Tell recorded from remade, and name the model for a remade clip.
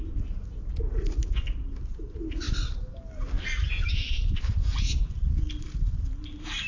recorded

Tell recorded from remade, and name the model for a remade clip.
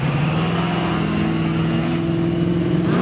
recorded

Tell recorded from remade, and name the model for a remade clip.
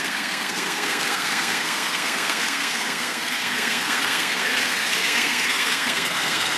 remade, codec, SNAC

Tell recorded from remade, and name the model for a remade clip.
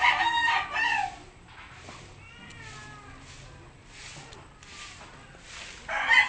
recorded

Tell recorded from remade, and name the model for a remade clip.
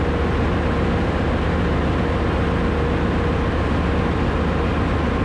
recorded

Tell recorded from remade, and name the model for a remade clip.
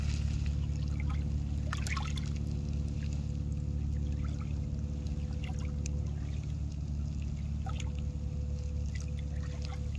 recorded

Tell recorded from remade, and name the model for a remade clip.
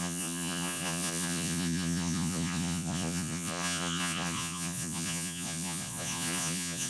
remade, vocoder, Vocos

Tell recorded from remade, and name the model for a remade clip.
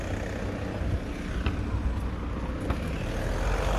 recorded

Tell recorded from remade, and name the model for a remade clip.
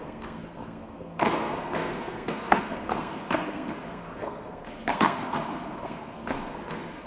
remade, codec, SNAC